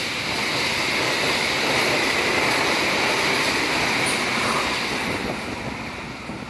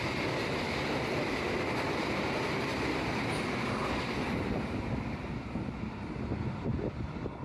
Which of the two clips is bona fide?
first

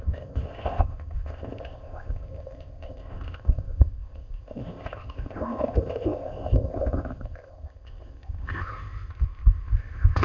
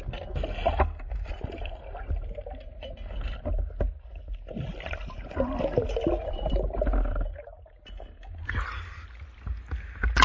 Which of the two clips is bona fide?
second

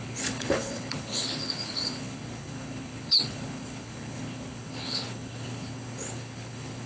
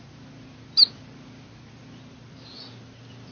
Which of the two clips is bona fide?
second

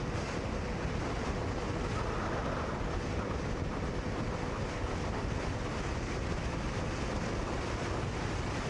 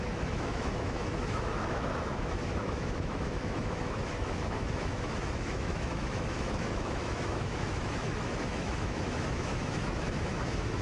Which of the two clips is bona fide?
first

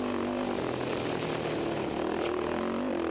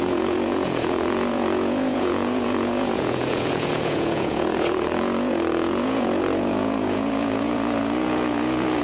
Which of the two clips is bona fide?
first